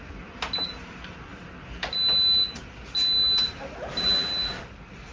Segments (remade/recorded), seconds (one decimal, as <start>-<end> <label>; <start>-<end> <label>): 0.0-5.1 recorded